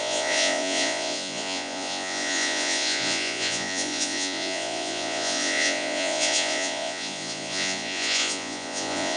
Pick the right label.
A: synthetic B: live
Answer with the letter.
A